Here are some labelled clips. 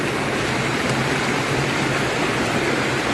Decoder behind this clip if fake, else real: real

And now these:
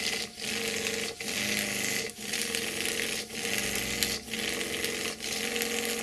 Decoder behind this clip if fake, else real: real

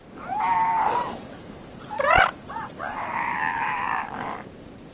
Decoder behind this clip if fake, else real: fake, vocoder, BigVGAN v2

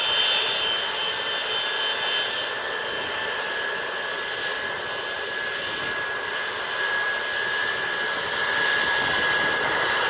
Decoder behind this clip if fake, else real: real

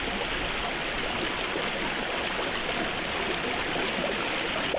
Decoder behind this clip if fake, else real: real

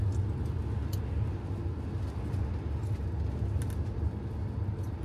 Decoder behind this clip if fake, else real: real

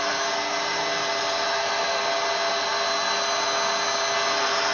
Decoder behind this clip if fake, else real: real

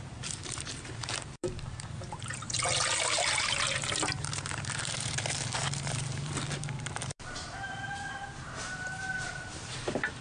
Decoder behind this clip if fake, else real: fake, vocoder, BigVGAN v2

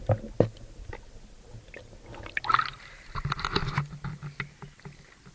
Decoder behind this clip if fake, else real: real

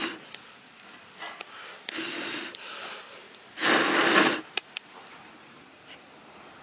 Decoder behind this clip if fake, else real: fake, vocoder, BigVGAN v2